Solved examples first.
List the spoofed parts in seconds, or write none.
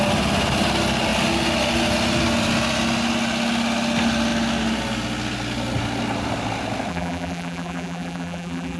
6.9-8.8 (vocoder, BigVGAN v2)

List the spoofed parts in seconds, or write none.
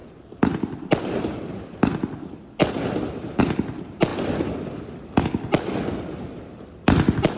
2.6-3.4 (vocoder, BigVGAN v2); 4.1-5.2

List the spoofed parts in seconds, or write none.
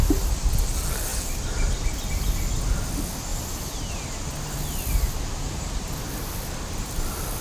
none